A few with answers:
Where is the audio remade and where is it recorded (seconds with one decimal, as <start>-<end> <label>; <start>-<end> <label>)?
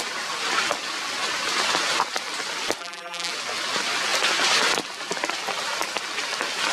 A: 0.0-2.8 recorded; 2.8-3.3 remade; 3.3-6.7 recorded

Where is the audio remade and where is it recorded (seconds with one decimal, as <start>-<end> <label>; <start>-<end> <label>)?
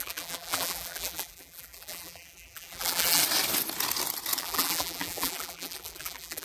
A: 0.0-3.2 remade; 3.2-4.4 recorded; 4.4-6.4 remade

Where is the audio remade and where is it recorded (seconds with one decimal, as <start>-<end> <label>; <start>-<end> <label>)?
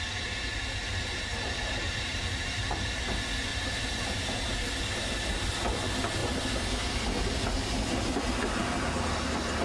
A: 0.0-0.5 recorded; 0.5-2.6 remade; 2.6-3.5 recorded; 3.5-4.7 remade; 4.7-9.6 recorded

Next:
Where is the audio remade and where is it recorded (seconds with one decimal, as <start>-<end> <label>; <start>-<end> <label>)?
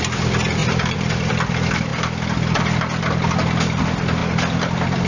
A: 0.0-0.6 recorded; 0.6-1.3 remade; 1.3-5.1 recorded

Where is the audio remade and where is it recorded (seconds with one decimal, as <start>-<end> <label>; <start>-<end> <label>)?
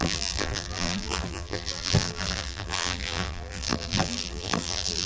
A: 0.0-5.1 remade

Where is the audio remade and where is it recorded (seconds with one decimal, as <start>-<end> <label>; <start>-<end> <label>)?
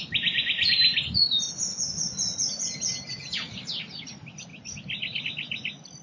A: 0.0-4.5 recorded; 4.5-5.2 remade; 5.2-6.0 recorded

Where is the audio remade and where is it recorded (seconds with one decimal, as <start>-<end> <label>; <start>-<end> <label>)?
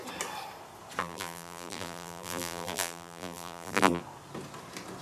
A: 0.0-1.0 recorded; 1.0-4.0 remade; 4.0-5.0 recorded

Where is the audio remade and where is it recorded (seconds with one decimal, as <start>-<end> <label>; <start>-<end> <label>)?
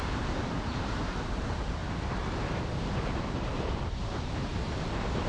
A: 0.0-1.8 remade; 1.8-2.6 recorded; 2.6-5.3 remade